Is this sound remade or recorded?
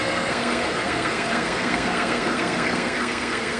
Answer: remade